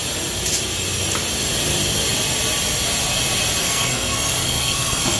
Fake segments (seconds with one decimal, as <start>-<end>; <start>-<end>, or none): 3.6-5.2